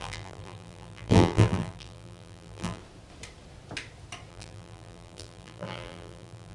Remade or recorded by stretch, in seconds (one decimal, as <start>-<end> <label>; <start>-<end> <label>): 0.0-2.8 remade; 2.8-4.3 recorded; 4.3-6.5 remade